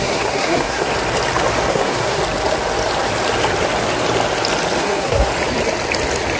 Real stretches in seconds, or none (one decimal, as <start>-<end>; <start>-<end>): 0.9-1.7; 2.2-4.8; 5.3-6.4